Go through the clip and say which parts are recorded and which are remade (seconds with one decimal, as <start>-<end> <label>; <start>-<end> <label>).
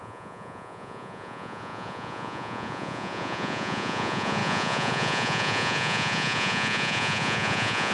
0.0-7.9 remade